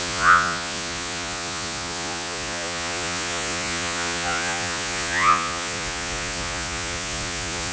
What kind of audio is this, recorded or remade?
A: remade